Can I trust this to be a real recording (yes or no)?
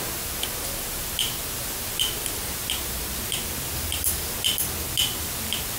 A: yes